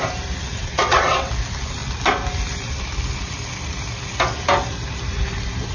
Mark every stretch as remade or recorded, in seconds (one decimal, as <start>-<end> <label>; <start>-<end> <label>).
0.0-0.6 recorded; 0.6-1.3 remade; 1.3-5.7 recorded